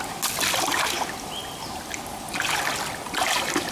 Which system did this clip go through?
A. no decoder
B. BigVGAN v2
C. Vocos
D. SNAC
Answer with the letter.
A